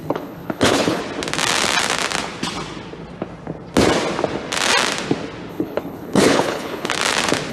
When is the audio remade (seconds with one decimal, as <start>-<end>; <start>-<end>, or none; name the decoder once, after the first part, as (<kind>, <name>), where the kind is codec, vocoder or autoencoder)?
0.0-1.0 (codec, HILCodec); 5.5-6.9